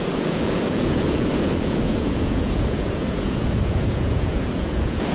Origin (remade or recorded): remade